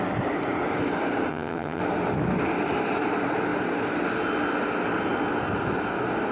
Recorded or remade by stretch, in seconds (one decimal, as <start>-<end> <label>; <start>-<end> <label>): 0.0-1.3 recorded; 1.3-1.8 remade; 1.8-6.3 recorded